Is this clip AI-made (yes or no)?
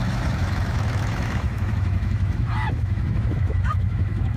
yes